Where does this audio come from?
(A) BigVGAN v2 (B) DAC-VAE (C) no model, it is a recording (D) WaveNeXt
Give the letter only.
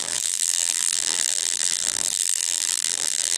A